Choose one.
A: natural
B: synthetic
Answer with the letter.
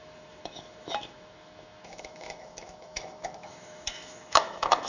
B